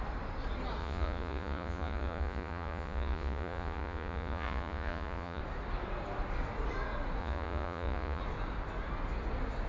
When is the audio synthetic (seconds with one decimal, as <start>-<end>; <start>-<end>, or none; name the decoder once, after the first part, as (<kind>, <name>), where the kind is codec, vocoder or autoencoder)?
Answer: 0.8-5.4 (vocoder, Vocos); 7.2-8.2